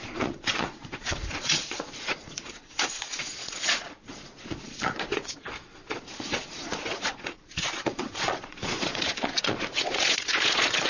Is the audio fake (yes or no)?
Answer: yes